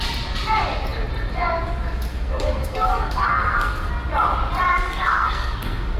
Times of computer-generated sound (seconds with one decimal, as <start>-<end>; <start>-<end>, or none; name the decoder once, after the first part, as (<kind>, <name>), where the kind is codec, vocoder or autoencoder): 2.1-3.9 (codec, SNAC); 4.7-6.0